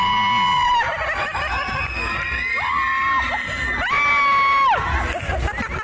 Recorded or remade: recorded